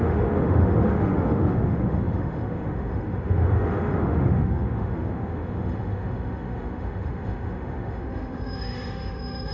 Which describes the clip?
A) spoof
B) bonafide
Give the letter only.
A